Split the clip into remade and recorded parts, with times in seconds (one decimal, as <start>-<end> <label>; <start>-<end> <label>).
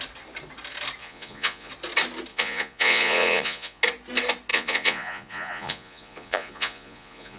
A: 0.0-1.0 recorded; 1.0-1.7 remade; 1.7-2.3 recorded; 2.3-3.8 remade; 3.8-4.5 recorded; 4.5-7.4 remade